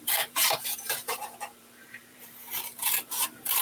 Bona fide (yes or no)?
no